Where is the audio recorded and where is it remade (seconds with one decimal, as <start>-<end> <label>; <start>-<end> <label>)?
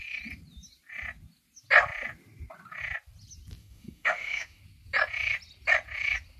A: 0.0-3.6 recorded; 3.6-4.6 remade; 4.6-6.4 recorded